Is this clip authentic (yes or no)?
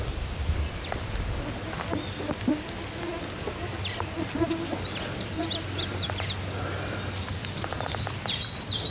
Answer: yes